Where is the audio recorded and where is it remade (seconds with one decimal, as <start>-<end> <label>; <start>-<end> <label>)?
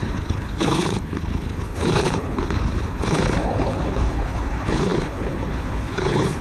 0.0-6.4 remade